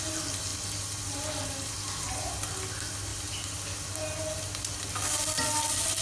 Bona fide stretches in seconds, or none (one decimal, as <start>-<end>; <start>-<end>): 0.0-6.0